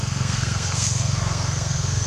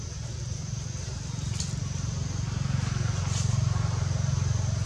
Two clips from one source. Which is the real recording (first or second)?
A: second